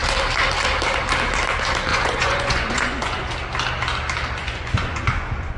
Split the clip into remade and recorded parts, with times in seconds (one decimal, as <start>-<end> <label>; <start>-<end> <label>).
0.0-1.9 recorded; 1.9-3.3 remade; 3.3-4.4 recorded; 4.4-5.6 remade